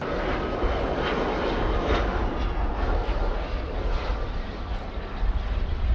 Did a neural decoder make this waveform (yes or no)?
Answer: no